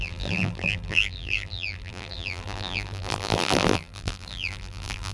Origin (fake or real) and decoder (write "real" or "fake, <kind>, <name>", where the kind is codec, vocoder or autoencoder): fake, vocoder, BigVGAN v2